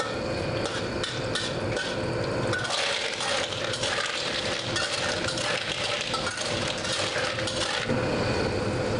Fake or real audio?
real